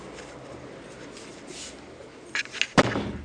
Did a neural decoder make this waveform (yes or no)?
no